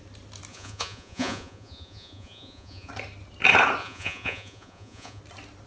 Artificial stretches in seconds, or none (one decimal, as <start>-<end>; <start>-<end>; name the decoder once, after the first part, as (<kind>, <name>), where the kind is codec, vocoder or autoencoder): 0.5-2.9 (vocoder, Vocos); 3.8-5.2